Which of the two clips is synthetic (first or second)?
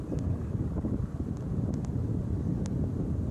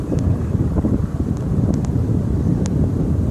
second